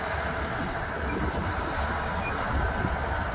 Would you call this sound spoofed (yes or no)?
no